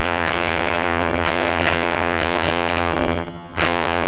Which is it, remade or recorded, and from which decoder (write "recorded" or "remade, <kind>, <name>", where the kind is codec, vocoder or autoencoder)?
remade, vocoder, HiFi-GAN